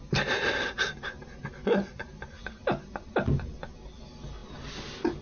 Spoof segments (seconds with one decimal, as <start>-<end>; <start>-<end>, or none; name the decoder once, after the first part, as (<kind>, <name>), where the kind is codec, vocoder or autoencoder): none